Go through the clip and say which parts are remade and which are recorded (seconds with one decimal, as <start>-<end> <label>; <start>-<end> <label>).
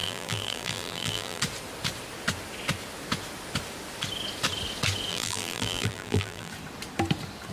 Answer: 0.0-1.4 remade; 1.4-5.1 recorded; 5.1-6.5 remade; 6.5-7.5 recorded